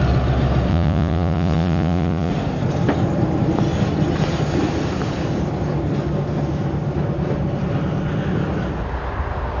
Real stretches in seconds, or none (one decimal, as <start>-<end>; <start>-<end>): 0.0-0.7; 2.3-9.6